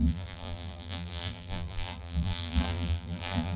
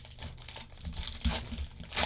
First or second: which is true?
second